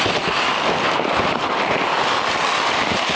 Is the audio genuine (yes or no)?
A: yes